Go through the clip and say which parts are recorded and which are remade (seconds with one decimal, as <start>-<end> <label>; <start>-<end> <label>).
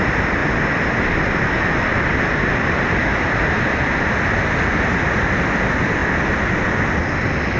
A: 0.0-7.6 recorded